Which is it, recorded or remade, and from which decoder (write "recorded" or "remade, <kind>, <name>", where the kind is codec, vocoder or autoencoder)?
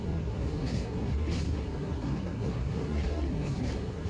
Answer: remade, codec, SNAC